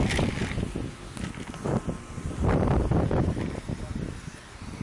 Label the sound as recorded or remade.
recorded